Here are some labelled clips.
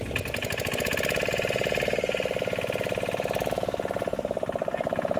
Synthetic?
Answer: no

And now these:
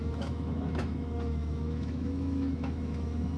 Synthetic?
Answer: yes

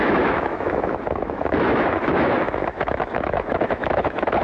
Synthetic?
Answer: yes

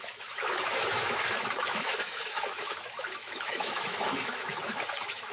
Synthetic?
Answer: yes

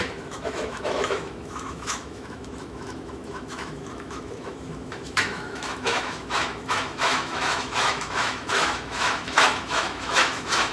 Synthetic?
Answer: yes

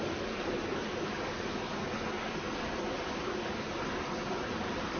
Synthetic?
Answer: no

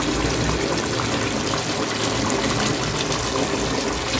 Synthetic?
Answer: no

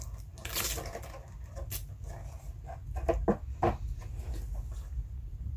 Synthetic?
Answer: no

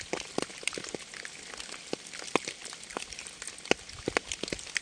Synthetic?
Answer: no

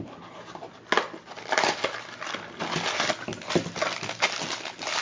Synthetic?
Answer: no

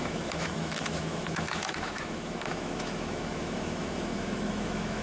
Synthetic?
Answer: yes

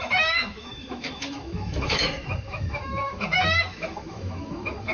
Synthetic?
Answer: yes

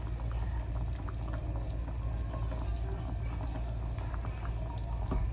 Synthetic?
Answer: no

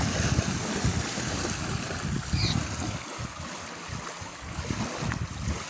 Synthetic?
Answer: no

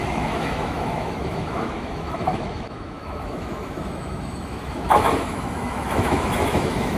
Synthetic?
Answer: yes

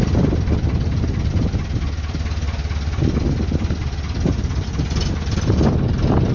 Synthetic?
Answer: no